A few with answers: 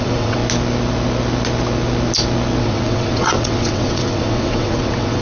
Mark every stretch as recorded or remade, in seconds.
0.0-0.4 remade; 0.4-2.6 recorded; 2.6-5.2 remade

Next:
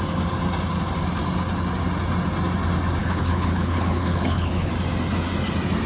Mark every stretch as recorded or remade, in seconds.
0.0-3.0 recorded; 3.0-4.7 remade; 4.7-5.9 recorded

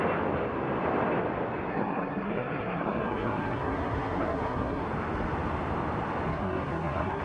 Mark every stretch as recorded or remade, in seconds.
0.0-1.7 recorded; 1.7-4.8 remade; 4.8-6.3 recorded; 6.3-7.2 remade

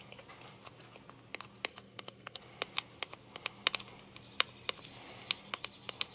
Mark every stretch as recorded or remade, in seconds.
0.0-1.7 recorded; 1.7-2.4 remade; 2.4-6.1 recorded

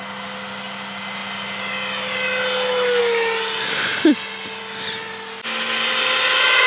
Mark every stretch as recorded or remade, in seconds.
0.0-6.7 recorded